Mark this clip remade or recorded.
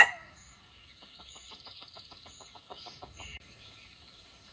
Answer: remade